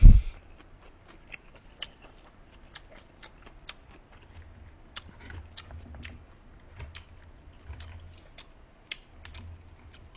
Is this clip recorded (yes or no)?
yes